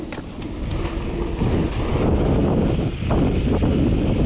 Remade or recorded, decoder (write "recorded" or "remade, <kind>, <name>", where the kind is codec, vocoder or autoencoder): recorded